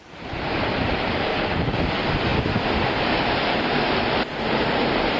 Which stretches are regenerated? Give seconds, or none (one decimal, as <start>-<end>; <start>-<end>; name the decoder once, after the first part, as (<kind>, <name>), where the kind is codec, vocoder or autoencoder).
0.0-5.2 (vocoder, BigVGAN v2)